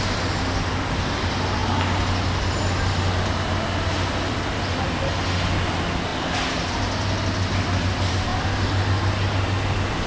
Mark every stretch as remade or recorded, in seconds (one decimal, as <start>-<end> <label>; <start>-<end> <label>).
0.0-10.1 recorded